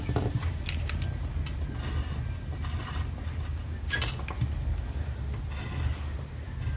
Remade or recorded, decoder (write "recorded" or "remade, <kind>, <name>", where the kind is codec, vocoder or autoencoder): recorded